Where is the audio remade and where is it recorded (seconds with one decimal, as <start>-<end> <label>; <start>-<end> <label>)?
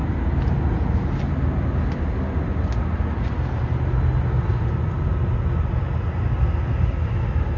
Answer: 0.0-7.6 recorded